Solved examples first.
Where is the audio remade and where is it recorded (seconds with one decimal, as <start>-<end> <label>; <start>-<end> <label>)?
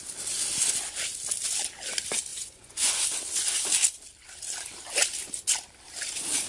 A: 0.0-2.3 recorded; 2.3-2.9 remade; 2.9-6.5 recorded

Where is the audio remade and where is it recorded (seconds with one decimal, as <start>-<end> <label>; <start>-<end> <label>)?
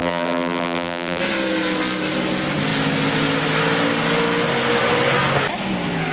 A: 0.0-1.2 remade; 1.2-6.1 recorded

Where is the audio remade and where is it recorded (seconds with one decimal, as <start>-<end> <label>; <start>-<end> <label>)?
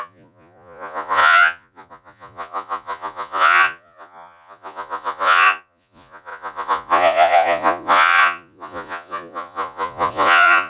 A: 0.0-10.7 remade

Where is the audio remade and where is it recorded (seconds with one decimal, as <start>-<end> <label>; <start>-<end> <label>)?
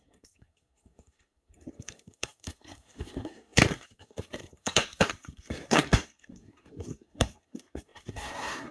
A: 0.0-8.7 remade